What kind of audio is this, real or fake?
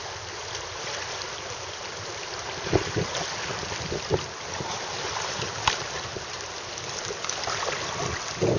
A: real